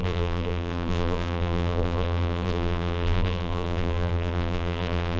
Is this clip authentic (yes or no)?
no